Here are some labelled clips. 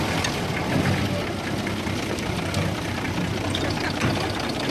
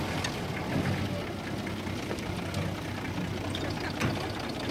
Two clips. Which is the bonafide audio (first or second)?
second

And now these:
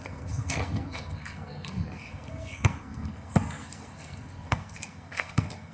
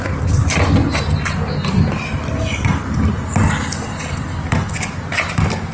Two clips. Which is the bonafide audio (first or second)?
second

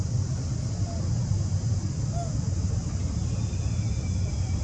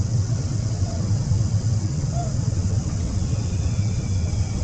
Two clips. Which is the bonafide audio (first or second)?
first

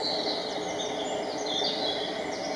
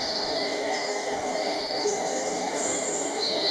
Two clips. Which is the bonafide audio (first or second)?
first